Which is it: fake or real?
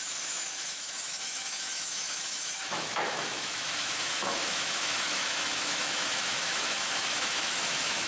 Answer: fake